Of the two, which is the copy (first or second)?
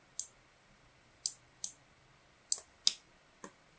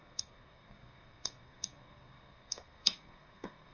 second